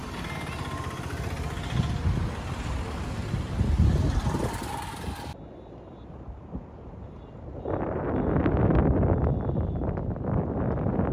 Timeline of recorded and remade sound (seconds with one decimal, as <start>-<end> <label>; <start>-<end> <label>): 0.0-11.1 recorded